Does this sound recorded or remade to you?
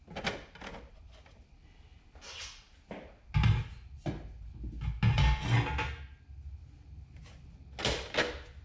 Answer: recorded